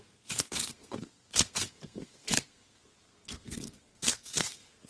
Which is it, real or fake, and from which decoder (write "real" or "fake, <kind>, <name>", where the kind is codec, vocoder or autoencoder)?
fake, codec, SNAC